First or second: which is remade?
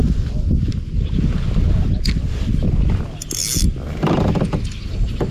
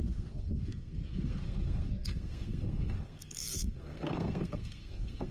second